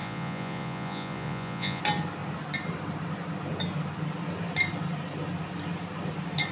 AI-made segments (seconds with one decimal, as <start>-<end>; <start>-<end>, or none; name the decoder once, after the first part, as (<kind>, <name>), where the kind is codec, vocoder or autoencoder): 0.0-1.8 (vocoder, Vocos)